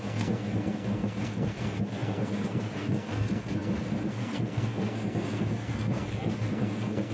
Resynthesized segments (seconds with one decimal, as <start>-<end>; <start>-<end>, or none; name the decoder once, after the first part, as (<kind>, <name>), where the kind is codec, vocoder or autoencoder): 0.0-7.1 (codec, SNAC)